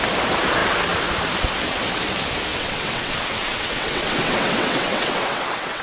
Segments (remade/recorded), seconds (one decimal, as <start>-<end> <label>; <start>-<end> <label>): 0.0-2.5 recorded; 2.5-5.8 remade